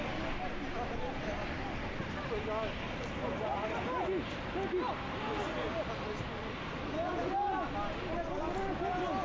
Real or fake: real